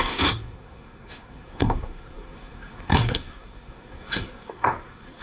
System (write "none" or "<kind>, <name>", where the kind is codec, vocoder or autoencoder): codec, SNAC